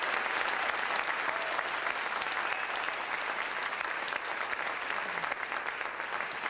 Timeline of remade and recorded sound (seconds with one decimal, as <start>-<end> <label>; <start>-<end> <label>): 0.0-3.6 recorded; 3.6-4.3 remade; 4.3-6.5 recorded